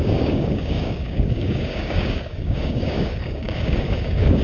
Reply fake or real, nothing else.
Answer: fake